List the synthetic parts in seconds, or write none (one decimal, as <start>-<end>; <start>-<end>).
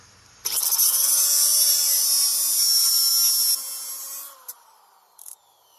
0.0-3.1; 4.0-5.8